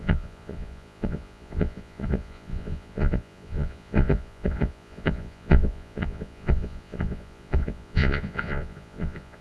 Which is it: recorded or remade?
remade